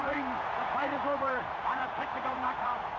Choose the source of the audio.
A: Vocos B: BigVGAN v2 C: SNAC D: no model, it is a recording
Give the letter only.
A